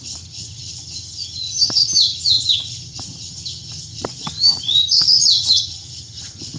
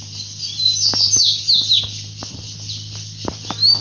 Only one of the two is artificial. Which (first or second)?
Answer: first